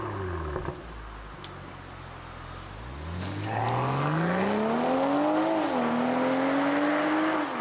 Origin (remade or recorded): recorded